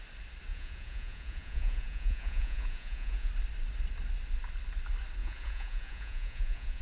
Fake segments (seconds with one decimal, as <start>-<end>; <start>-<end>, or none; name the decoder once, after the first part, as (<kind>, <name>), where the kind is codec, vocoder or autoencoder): 0.5-3.3 (vocoder, Vocos); 5.2-6.8